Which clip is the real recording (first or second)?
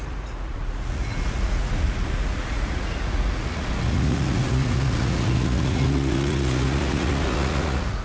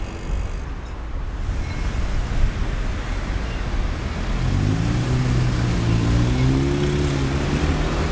second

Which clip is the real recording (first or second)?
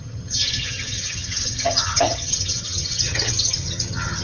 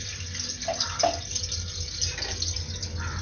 second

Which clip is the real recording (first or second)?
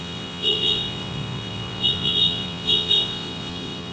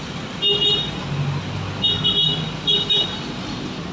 second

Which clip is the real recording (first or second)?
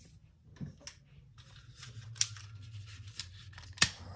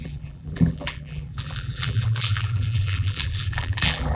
first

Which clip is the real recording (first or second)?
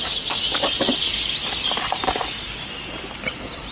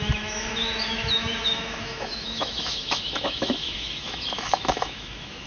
first